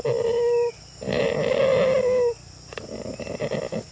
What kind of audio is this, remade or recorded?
recorded